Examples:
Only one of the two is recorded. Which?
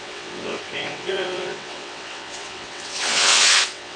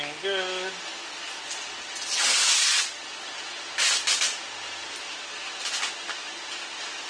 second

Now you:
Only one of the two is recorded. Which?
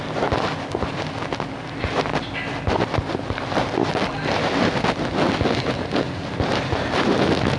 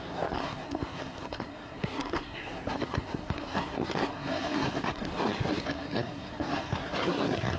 first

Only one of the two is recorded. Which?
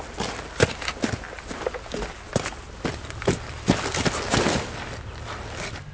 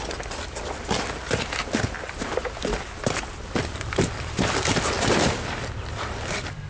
first